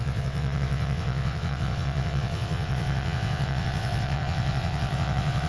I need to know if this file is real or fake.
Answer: fake